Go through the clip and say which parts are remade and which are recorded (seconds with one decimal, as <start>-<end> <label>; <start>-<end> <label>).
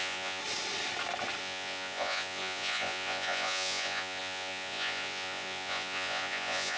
0.0-0.4 remade; 0.4-1.4 recorded; 1.4-6.8 remade